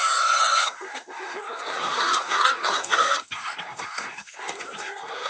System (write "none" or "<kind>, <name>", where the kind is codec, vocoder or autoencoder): codec, SNAC